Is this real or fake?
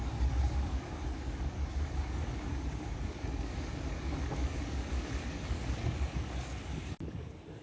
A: fake